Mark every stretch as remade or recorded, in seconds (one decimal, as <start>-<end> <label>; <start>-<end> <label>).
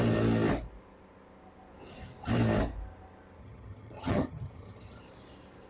0.0-3.4 recorded; 3.4-5.0 remade; 5.0-5.7 recorded